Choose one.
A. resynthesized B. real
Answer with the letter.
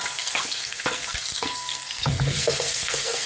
A